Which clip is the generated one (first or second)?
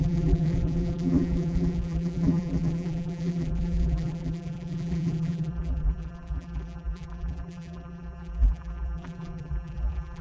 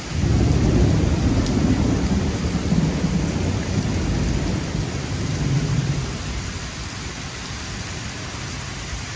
first